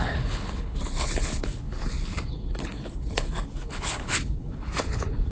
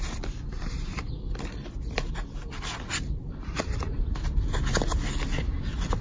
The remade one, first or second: first